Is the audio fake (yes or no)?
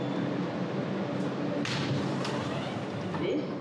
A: no